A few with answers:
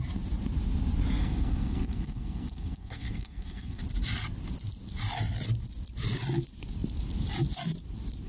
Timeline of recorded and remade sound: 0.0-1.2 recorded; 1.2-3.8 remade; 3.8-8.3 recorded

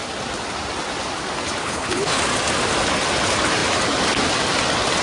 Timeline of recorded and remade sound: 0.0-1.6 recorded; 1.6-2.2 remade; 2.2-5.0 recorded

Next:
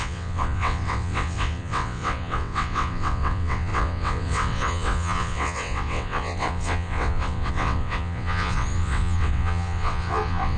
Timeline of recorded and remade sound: 0.0-10.6 remade